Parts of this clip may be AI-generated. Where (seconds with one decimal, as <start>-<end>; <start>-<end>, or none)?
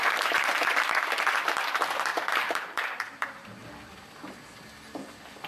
0.0-0.7; 2.1-3.9